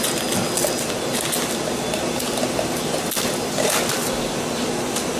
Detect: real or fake real